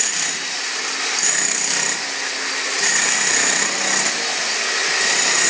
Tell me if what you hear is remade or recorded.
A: recorded